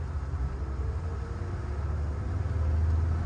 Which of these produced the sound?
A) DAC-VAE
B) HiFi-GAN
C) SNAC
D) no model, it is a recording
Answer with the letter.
D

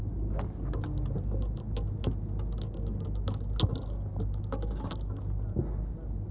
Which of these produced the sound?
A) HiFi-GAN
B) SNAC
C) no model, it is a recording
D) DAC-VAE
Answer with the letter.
C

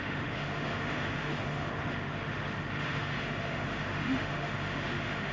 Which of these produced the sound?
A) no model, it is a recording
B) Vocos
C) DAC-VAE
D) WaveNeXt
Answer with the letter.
C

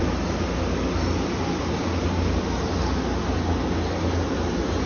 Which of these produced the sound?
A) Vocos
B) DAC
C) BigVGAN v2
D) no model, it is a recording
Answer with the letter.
D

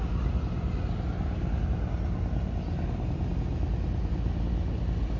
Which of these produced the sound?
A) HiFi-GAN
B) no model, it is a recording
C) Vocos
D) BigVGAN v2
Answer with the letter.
B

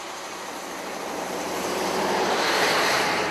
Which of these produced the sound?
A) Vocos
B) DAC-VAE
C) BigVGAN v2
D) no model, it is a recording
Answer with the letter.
C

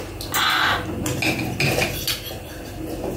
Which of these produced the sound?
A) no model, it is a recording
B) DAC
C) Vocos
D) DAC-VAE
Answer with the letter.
A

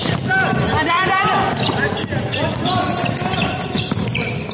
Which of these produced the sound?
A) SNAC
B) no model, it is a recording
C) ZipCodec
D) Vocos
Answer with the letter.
B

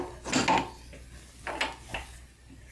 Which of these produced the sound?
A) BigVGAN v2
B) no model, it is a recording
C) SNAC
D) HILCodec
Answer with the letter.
B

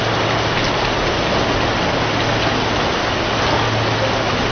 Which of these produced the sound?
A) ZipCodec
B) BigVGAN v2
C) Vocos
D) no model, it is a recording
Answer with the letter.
D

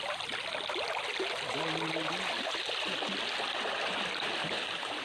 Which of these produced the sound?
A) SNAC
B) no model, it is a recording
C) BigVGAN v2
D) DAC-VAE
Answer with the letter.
B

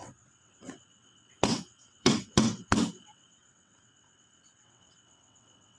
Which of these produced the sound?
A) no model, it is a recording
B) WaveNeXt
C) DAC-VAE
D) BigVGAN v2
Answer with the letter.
B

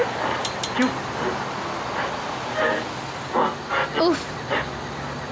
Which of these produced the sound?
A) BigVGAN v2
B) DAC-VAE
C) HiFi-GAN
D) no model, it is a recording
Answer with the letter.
D